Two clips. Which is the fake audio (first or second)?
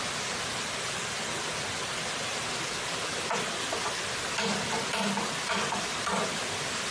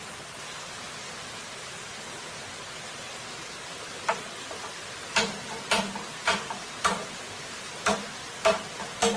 first